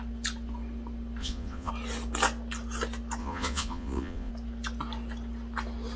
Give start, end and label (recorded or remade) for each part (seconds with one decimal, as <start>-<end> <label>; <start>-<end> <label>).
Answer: 0.0-1.2 recorded; 1.2-1.7 remade; 1.7-3.2 recorded; 3.2-4.3 remade; 4.3-6.0 recorded